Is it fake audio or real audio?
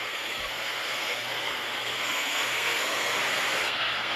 fake